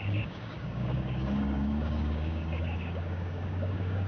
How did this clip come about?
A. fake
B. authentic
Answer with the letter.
A